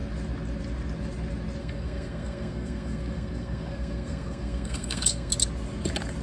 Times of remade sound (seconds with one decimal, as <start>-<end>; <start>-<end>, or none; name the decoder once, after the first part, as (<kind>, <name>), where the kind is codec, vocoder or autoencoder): 1.6-5.3 (codec, SNAC)